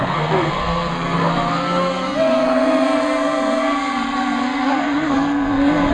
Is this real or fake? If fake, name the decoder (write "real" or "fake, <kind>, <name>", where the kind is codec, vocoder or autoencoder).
fake, codec, SNAC